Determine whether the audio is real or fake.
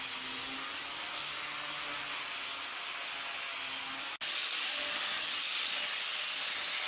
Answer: real